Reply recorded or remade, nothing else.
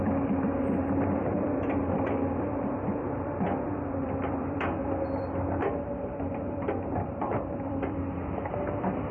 remade